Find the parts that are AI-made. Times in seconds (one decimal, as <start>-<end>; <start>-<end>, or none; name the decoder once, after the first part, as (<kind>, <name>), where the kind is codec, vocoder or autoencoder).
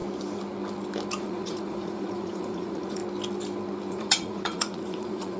1.2-3.0 (vocoder, Vocos); 3.9-5.4